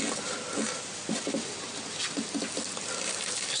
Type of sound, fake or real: real